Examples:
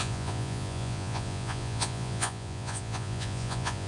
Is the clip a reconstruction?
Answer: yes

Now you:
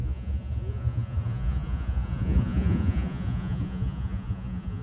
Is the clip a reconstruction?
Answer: yes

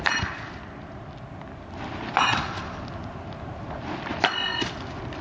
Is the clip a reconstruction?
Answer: no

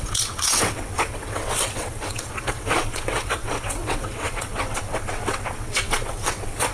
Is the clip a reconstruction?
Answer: yes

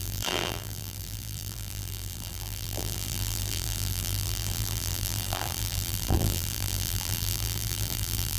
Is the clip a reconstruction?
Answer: yes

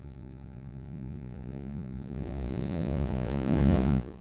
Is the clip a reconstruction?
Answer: yes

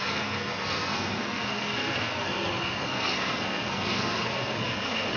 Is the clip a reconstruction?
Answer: yes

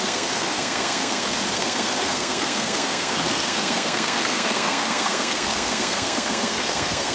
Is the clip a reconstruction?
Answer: yes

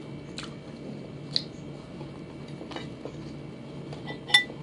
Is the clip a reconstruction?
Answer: no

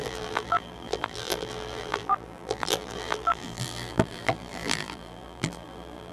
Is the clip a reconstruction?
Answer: yes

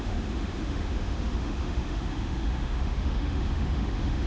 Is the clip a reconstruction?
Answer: yes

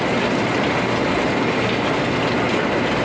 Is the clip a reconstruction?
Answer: no